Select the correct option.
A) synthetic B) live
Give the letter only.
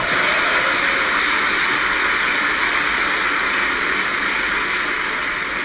B